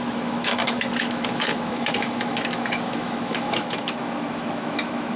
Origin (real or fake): fake